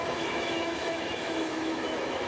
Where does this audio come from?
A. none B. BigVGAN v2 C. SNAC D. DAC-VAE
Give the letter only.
D